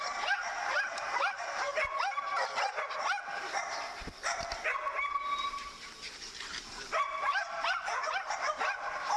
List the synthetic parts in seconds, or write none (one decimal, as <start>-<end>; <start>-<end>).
0.0-9.2